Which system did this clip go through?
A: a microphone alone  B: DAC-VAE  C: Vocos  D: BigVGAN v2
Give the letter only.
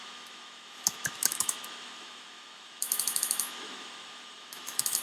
B